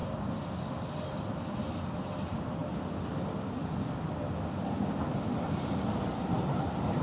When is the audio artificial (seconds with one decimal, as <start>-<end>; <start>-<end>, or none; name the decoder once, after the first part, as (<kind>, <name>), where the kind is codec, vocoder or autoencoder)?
none